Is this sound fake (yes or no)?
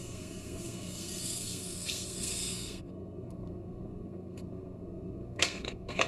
yes